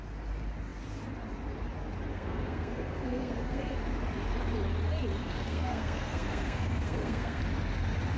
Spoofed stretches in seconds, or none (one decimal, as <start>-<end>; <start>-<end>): 2.1-3.8; 5.2-7.4